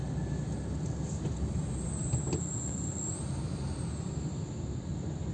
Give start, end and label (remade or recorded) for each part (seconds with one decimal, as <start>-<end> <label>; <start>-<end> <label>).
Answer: 0.0-5.3 recorded